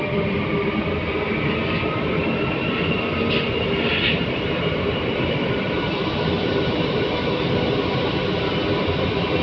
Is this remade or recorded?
remade